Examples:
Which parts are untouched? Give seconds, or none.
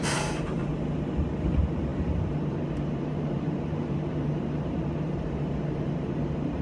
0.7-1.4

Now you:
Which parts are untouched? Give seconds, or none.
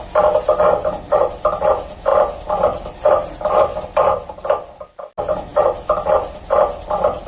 0.0-7.3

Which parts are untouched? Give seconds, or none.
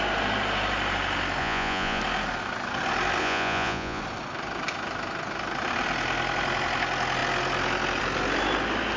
0.0-1.4; 2.0-3.2; 4.0-9.0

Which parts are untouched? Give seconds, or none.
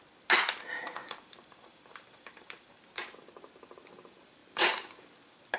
0.0-1.0; 3.2-4.4; 4.9-5.6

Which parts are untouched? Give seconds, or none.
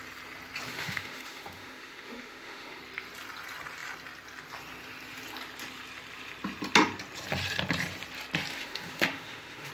0.0-0.7; 2.8-8.5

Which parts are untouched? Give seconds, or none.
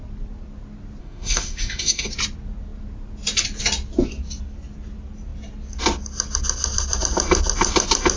0.0-1.0; 2.1-8.2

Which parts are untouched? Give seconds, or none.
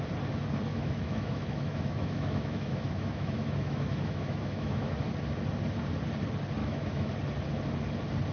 0.0-0.7; 5.1-6.6; 7.1-8.3